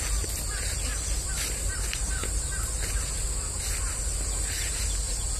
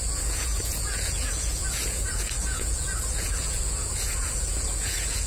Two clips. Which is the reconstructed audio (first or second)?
second